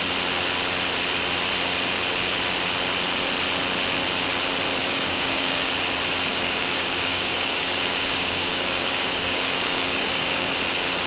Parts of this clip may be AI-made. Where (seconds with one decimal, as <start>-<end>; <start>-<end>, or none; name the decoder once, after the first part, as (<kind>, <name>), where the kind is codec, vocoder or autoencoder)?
4.8-5.7 (codec, DAC); 6.3-10.5